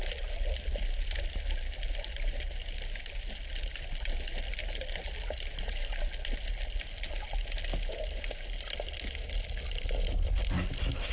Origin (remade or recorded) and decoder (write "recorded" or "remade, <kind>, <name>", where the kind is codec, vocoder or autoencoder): recorded